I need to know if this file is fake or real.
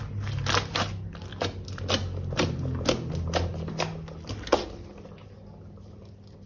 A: real